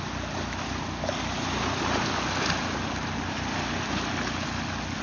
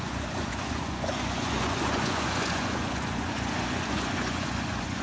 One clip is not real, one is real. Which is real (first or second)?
first